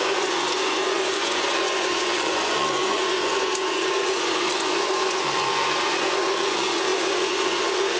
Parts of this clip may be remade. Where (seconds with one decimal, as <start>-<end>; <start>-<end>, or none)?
0.0-8.0